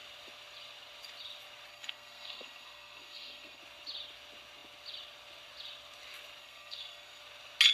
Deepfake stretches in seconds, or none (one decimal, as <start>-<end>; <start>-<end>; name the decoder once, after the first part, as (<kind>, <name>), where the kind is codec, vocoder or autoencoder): 1.7-3.6 (codec, SNAC); 6.4-7.2